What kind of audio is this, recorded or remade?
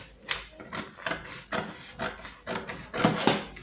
recorded